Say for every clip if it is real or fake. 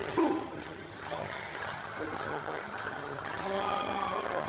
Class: fake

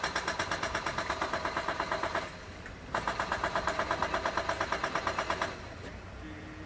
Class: real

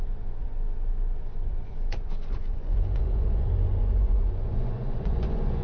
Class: fake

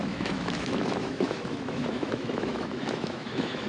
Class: fake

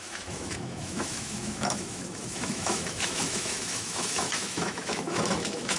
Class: fake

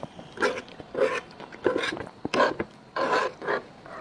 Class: real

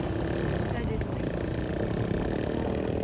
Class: real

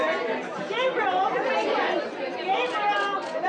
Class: fake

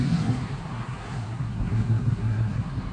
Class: fake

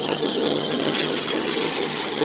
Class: fake